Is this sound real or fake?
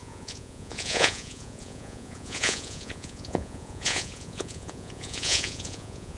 fake